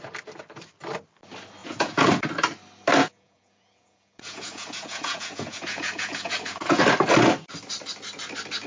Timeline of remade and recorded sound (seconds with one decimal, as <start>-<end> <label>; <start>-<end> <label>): 0.0-1.6 recorded; 1.6-2.1 remade; 2.1-3.0 recorded; 3.0-6.8 remade; 6.8-8.7 recorded